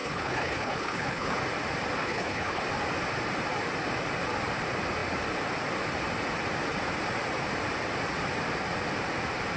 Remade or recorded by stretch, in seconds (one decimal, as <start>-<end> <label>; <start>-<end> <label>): 0.0-1.4 remade; 1.4-2.0 recorded; 2.0-2.6 remade; 2.6-9.6 recorded